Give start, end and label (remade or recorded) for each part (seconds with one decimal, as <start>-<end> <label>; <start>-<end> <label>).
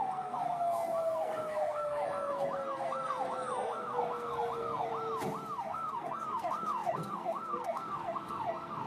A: 0.0-4.9 remade; 4.9-5.6 recorded; 5.6-8.9 remade